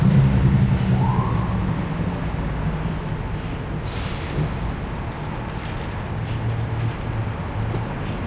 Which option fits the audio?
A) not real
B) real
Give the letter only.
B